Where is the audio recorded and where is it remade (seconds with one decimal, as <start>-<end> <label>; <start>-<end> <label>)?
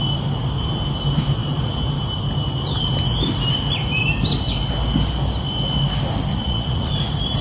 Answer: 0.0-6.3 recorded; 6.3-6.9 remade; 6.9-7.4 recorded